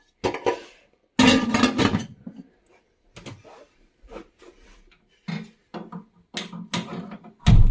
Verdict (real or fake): real